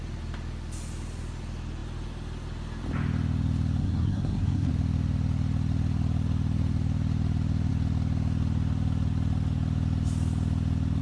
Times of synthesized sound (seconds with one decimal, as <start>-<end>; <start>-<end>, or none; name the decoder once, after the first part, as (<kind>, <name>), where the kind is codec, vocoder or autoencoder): 3.8-4.7 (codec, SNAC)